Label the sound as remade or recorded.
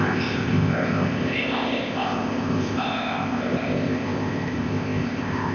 remade